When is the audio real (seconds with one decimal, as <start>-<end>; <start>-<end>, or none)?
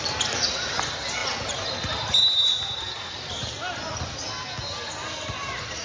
0.0-5.8